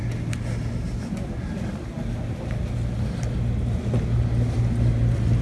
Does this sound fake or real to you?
real